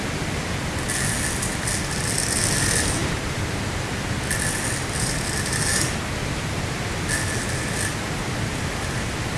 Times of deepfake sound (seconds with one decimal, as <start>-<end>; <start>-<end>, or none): none